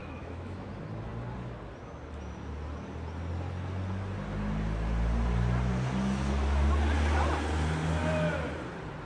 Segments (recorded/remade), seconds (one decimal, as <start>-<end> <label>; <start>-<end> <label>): 0.0-0.7 remade; 0.7-9.1 recorded